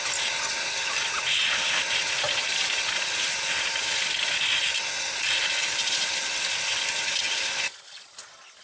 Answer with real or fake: real